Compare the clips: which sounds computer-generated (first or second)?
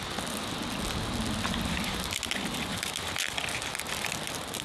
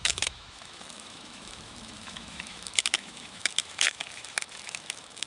second